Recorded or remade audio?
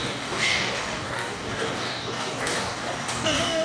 remade